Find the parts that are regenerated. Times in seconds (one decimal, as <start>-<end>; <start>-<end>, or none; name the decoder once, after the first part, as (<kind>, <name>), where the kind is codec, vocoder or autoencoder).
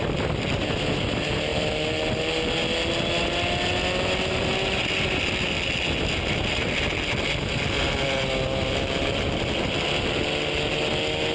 none